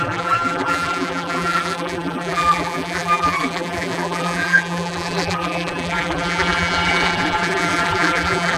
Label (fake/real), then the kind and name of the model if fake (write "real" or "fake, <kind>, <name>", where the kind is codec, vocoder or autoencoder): fake, vocoder, BigVGAN v2